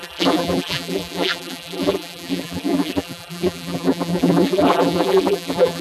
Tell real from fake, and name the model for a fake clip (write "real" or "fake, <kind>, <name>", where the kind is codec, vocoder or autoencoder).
fake, vocoder, BigVGAN v2